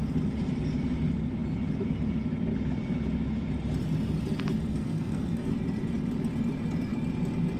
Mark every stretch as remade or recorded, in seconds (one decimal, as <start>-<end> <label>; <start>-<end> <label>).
0.0-4.7 recorded; 4.7-5.5 remade; 5.5-7.6 recorded